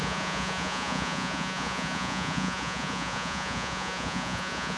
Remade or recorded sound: remade